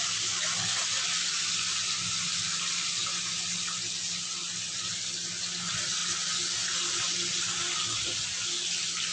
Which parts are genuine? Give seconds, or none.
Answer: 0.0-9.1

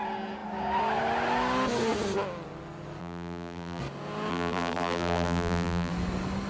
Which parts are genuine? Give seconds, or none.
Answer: 0.0-3.0; 3.8-4.3; 5.9-6.5

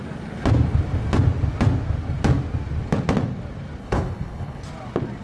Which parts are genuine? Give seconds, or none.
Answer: 0.0-3.8; 4.6-5.2